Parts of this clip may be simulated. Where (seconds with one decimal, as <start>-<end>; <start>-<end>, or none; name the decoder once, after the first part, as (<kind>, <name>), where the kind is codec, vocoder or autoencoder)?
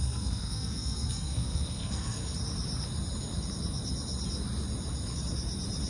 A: 0.0-2.2 (codec, SNAC)